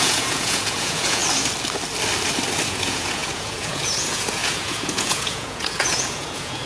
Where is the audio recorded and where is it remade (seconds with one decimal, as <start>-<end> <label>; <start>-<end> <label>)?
0.0-1.2 remade; 1.2-2.7 recorded; 2.7-6.7 remade